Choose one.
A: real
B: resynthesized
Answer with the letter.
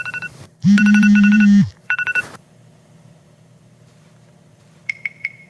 B